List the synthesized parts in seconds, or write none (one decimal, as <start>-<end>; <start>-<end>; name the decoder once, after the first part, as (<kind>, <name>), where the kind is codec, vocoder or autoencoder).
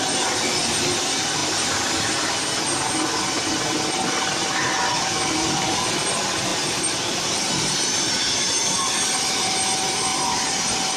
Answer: 6.5-8.7 (vocoder, BigVGAN v2); 10.1-11.0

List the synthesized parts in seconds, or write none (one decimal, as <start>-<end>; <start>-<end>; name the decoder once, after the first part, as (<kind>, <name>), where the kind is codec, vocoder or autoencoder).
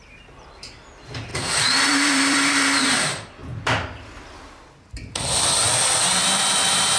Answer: 0.0-1.3 (vocoder, BigVGAN v2); 1.9-3.4; 5.8-7.0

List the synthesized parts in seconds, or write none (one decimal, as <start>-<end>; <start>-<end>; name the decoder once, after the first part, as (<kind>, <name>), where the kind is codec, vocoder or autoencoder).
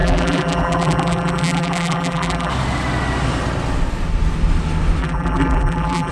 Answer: 0.0-2.5 (vocoder, BigVGAN v2); 5.0-6.1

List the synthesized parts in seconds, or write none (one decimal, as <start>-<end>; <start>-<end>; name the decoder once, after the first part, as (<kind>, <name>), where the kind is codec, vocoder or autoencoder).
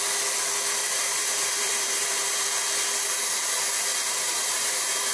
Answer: 0.8-2.5 (vocoder, BigVGAN v2); 3.9-5.1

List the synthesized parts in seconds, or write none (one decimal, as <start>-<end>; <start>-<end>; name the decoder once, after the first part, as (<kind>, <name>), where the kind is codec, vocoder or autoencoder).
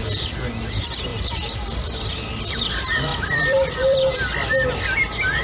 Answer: 3.1-4.1 (vocoder, BigVGAN v2)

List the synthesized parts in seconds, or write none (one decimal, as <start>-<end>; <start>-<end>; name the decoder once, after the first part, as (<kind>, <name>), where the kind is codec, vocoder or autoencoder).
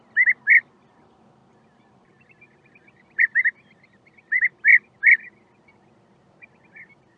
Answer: 1.4-5.7 (vocoder, BigVGAN v2)